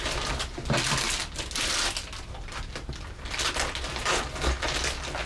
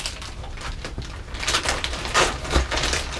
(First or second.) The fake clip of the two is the second